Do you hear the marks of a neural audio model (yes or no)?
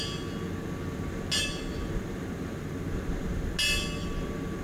no